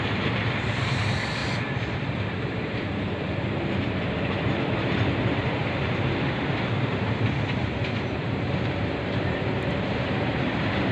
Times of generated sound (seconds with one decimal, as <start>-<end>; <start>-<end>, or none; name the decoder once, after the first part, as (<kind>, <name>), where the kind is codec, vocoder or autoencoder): 0.0-1.4 (vocoder, BigVGAN v2); 2.1-10.9